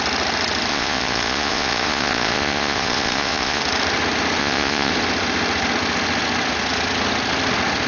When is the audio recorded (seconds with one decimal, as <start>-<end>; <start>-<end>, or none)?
0.0-0.7; 3.6-4.4; 4.9-7.9